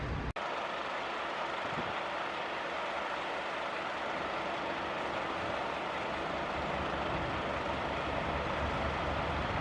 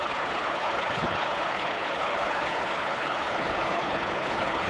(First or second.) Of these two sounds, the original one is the first